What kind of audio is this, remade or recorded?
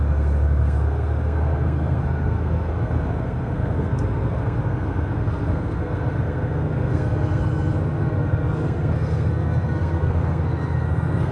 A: remade